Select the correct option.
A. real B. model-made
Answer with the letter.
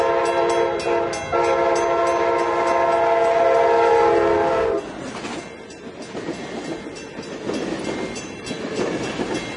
A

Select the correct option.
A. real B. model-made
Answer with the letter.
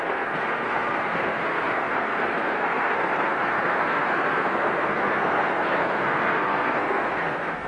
B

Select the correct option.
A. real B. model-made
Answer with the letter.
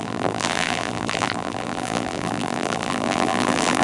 B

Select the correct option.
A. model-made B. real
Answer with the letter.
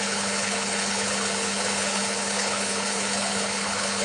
A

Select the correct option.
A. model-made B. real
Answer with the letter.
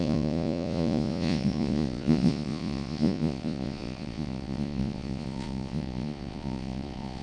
A